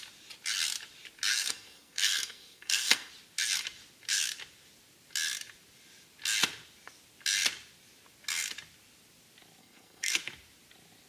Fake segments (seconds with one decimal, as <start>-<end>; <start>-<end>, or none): 1.3-3.1; 9.6-10.2